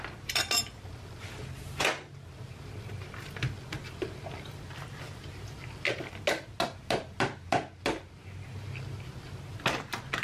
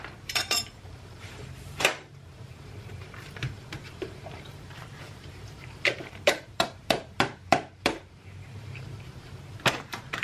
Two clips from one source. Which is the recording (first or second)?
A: first